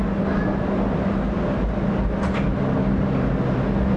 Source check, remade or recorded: recorded